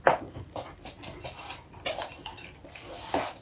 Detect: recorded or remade recorded